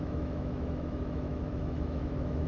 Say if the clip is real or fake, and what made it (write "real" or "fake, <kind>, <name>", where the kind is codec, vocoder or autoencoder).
fake, autoencoder, DAC-VAE